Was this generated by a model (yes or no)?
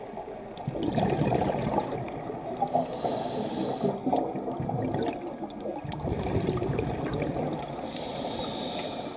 no